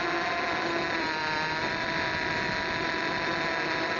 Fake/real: real